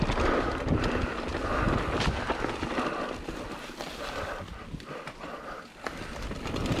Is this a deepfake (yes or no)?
no